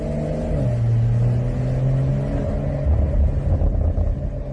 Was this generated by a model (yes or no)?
no